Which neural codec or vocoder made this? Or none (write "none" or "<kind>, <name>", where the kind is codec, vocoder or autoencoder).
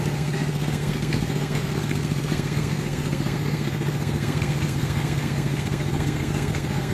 codec, SNAC